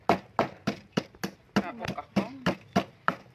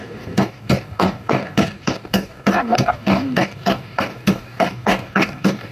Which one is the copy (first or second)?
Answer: second